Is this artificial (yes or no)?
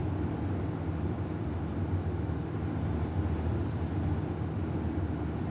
no